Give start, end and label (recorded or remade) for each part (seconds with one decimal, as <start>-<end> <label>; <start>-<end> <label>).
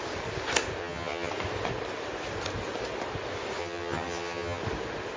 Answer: 0.0-0.8 recorded; 0.8-1.3 remade; 1.3-3.6 recorded; 3.6-4.6 remade; 4.6-5.2 recorded